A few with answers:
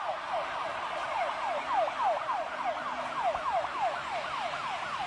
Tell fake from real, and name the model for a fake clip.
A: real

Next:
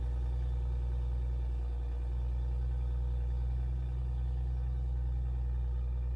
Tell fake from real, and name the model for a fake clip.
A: real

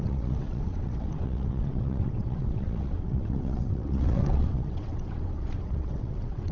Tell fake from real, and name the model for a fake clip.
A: fake, vocoder, WaveNeXt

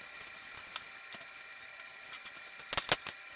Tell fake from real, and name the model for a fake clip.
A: real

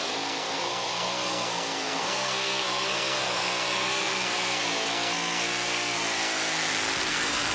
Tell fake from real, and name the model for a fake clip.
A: fake, codec, SNAC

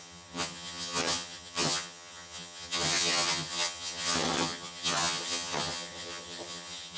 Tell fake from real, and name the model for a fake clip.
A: fake, vocoder, HiFi-GAN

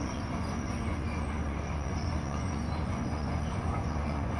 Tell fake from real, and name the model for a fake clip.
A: fake, vocoder, Vocos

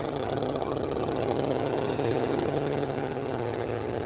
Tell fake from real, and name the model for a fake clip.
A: fake, vocoder, HiFi-GAN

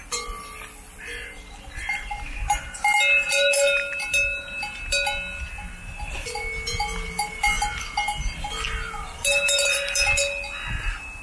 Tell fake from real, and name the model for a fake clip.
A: real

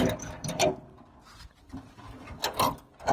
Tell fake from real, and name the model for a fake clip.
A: real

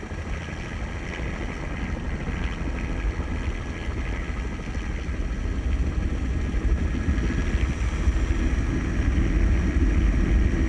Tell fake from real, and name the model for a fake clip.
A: real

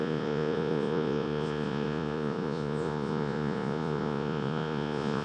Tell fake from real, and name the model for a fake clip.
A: fake, vocoder, Vocos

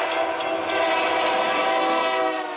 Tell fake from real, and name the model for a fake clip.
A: real